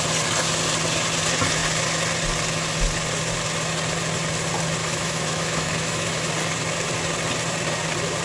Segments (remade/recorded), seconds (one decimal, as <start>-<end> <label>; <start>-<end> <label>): 0.0-4.8 recorded; 4.8-6.3 remade; 6.3-8.2 recorded